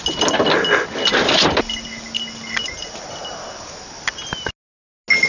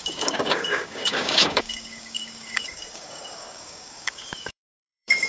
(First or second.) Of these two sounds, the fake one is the second